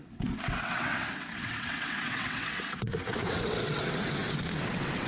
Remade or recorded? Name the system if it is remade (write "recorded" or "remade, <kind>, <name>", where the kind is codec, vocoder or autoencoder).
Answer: remade, vocoder, WaveNeXt